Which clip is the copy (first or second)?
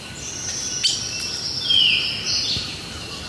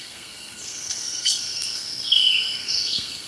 second